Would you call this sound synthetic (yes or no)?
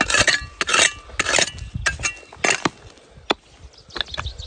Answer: no